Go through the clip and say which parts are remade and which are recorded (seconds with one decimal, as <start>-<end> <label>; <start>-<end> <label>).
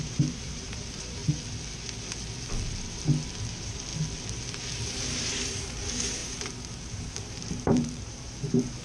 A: 0.0-1.2 remade; 1.2-3.5 recorded; 3.5-3.9 remade; 3.9-4.9 recorded; 4.9-8.8 remade